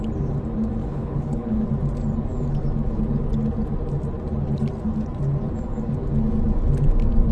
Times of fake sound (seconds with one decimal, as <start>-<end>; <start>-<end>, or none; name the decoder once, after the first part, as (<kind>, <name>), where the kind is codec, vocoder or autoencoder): 0.8-1.6 (codec, HILCodec)